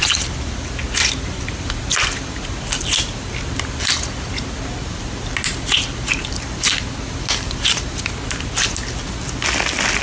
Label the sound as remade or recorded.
recorded